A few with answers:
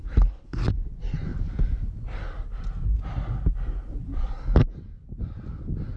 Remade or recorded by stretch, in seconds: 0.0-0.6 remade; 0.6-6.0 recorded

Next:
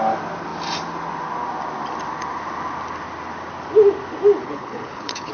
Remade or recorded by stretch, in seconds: 0.0-4.4 recorded; 4.4-5.3 remade

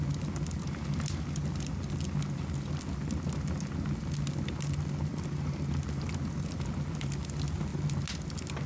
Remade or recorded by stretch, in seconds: 0.0-8.7 recorded

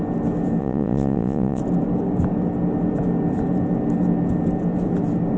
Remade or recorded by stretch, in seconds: 0.0-0.6 recorded; 0.6-1.6 remade; 1.6-5.4 recorded

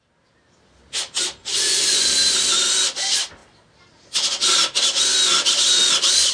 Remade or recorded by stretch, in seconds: 0.0-1.4 recorded; 1.4-2.1 remade; 2.1-6.3 recorded

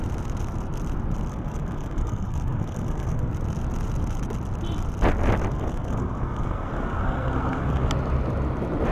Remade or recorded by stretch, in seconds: 0.0-1.3 recorded; 1.3-3.3 remade; 3.3-5.5 recorded; 5.5-7.9 remade; 7.9-8.9 recorded